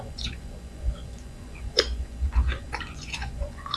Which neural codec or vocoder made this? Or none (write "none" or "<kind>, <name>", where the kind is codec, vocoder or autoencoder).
vocoder, Vocos